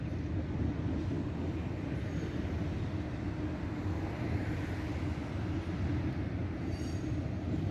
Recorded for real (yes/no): yes